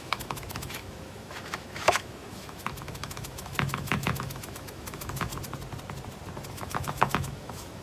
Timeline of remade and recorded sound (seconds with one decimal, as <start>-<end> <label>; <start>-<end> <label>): 0.0-5.3 remade; 5.3-6.5 recorded; 6.5-7.8 remade